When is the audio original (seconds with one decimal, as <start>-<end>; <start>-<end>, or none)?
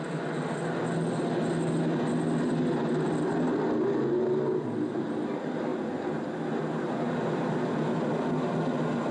0.0-9.1